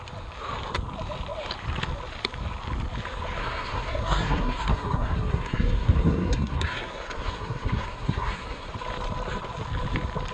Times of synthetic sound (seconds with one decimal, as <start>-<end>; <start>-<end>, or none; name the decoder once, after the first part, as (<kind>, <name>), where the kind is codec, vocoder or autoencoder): 3.4-8.7 (codec, SNAC)